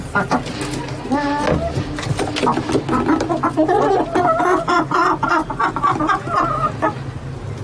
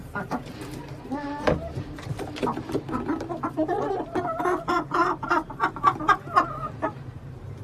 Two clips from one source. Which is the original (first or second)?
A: first